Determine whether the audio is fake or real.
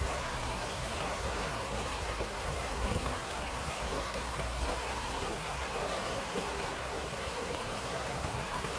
fake